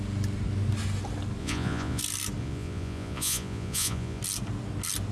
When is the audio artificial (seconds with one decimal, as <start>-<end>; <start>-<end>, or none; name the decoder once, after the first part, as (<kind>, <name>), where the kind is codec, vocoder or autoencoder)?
1.4-2.0 (vocoder, Vocos); 2.4-4.2